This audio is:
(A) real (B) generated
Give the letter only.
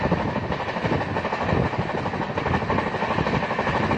A